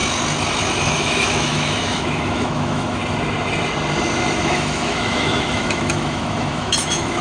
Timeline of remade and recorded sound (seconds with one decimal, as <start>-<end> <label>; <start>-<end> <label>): 0.0-0.9 recorded; 0.9-3.0 remade; 3.0-4.4 recorded; 4.4-7.2 remade